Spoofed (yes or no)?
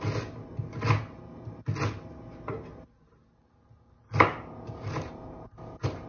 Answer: no